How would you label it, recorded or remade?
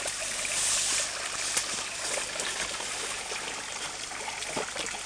recorded